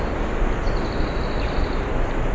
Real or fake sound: real